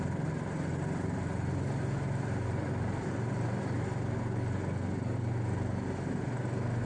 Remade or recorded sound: recorded